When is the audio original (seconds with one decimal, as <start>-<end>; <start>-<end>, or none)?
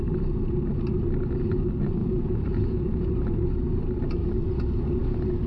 0.0-2.0; 3.1-5.5